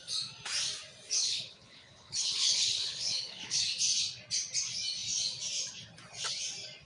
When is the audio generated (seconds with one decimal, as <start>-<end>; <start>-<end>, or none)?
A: 1.2-3.6